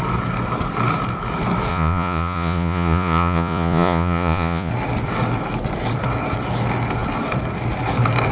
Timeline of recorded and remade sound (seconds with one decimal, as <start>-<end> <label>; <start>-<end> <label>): 0.0-1.7 recorded; 1.7-4.7 remade; 4.7-8.3 recorded